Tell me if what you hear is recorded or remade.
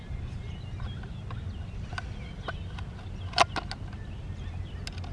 recorded